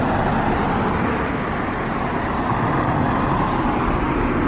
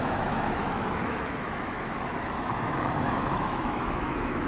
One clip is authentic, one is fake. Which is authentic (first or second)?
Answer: first